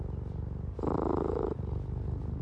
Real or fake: real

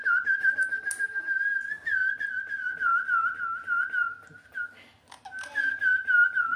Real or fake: real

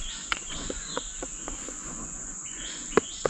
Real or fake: fake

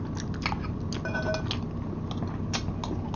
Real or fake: real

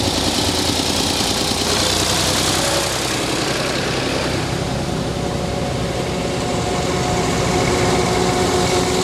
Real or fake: real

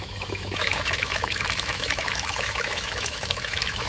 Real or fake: fake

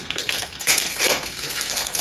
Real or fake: fake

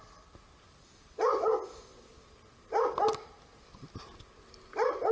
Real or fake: real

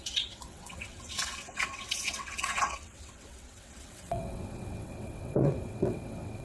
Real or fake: fake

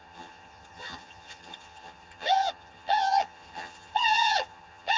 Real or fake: fake